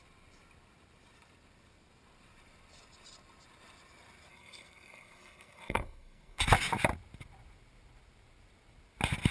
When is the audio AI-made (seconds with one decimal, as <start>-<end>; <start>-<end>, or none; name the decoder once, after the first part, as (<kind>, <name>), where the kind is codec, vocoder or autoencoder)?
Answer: 4.3-6.4 (codec, SNAC)